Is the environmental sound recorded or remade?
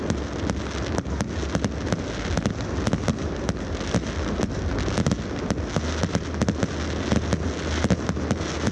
recorded